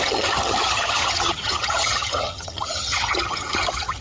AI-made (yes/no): yes